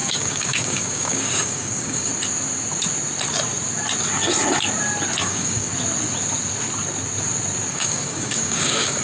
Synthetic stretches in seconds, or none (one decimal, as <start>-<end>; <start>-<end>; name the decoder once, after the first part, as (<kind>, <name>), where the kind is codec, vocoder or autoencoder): 0.0-2.1 (codec, DAC); 5.2-5.7; 7.7-9.0